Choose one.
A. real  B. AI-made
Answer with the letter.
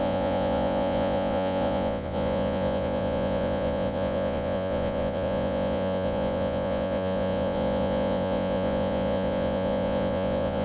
B